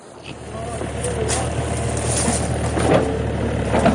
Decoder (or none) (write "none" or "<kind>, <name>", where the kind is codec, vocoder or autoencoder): none